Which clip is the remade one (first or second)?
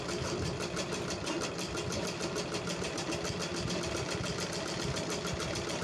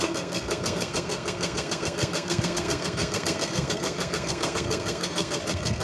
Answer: second